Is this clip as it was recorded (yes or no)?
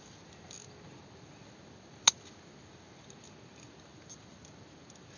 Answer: yes